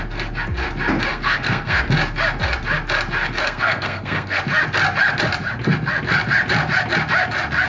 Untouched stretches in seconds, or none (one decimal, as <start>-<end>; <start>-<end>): 0.0-1.1; 1.8-3.4; 4.4-7.7